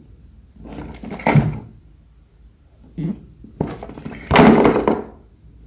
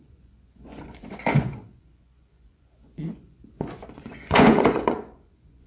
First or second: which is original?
first